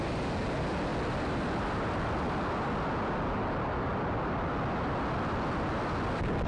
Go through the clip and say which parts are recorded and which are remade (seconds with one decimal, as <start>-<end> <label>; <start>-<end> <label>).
0.0-6.5 recorded